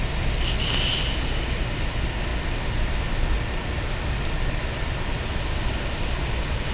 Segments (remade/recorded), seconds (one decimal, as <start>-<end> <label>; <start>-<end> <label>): 0.0-6.7 recorded